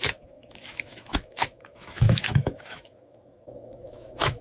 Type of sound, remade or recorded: remade